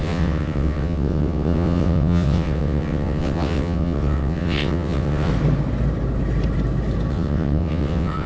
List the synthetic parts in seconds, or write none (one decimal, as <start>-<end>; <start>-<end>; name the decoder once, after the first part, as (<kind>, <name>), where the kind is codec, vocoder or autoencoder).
0.0-5.3 (vocoder, WaveNeXt); 7.1-8.3